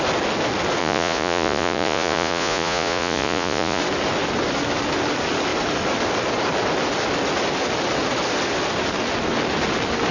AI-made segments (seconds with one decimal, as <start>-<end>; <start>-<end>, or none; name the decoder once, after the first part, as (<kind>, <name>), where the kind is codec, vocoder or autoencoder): 0.8-3.8 (vocoder, Vocos)

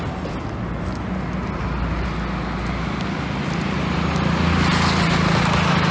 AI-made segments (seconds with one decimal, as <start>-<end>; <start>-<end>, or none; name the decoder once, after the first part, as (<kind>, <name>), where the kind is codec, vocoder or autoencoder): none

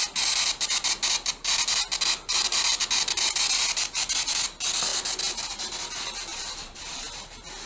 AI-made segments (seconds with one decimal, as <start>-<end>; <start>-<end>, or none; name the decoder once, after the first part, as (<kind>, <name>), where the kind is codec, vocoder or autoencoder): 6.3-7.1 (vocoder, Vocos)

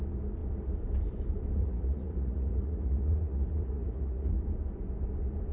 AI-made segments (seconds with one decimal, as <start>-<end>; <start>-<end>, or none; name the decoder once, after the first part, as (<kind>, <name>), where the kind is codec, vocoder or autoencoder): 1.6-4.4 (vocoder, Vocos)

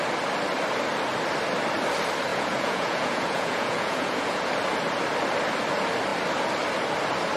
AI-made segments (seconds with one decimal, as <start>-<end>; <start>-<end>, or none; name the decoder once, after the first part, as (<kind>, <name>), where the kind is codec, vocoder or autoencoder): 2.3-4.5 (vocoder, Vocos)

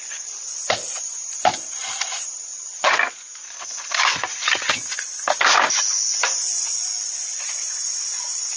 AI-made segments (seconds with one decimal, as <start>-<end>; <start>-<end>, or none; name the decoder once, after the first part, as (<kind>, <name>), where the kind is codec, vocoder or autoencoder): none